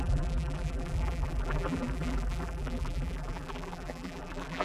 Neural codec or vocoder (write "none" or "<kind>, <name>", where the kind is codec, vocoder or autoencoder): vocoder, BigVGAN v2